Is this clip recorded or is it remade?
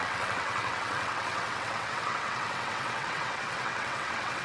remade